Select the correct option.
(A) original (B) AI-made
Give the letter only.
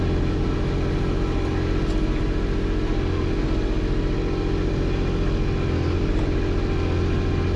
A